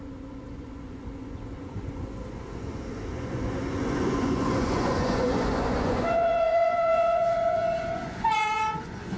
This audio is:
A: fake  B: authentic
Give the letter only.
A